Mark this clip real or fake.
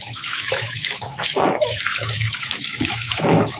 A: fake